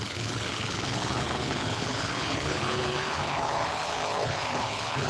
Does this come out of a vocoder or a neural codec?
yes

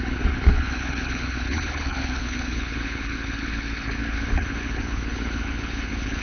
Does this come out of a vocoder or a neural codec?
yes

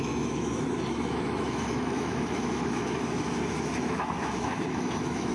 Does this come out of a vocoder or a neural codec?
yes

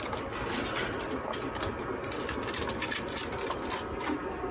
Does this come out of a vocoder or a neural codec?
no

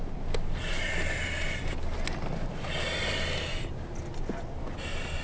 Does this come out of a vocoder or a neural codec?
no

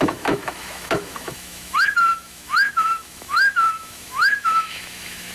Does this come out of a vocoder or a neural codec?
yes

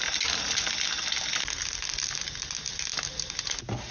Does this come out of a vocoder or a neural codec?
no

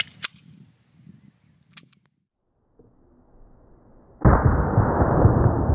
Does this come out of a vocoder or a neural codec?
no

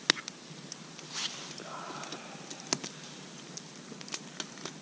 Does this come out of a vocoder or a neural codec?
no